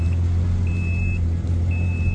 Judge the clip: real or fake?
real